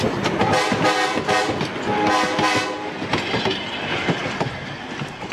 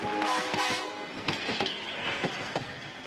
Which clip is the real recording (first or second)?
first